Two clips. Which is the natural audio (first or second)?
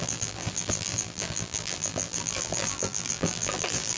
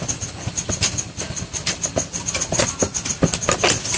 second